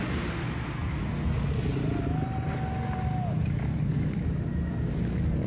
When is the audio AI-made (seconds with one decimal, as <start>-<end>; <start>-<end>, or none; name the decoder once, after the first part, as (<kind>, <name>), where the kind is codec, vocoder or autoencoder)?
none